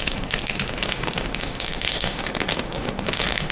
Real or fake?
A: fake